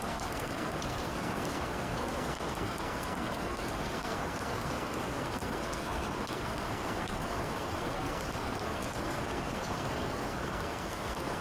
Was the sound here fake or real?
fake